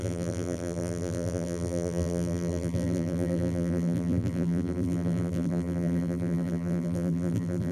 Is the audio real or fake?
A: fake